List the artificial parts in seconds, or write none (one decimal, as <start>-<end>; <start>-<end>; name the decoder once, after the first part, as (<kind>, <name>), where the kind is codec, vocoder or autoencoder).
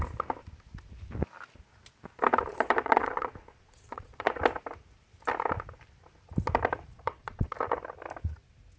2.5-4.4 (vocoder, Vocos); 6.9-7.5